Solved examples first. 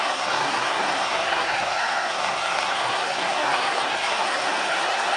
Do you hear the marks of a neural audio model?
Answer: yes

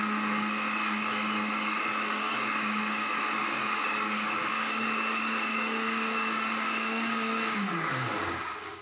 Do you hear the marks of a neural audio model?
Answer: yes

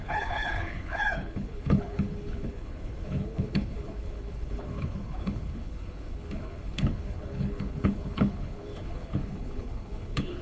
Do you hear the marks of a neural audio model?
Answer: yes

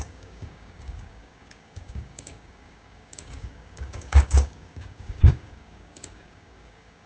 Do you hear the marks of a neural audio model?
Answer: yes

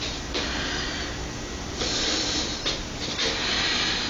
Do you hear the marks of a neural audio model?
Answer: no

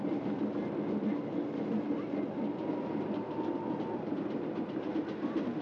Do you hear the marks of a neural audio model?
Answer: no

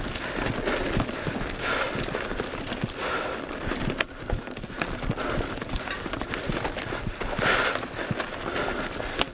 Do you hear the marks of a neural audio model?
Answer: no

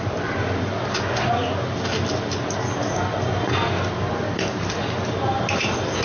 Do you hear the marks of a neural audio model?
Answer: no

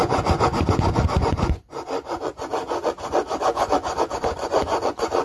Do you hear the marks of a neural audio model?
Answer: yes